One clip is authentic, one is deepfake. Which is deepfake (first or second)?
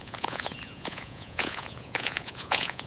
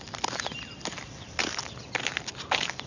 first